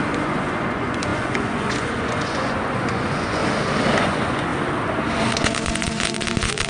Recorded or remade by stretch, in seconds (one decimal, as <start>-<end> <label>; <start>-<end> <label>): 0.0-3.4 remade; 3.4-4.0 recorded; 4.0-4.5 remade; 4.5-5.1 recorded; 5.1-6.7 remade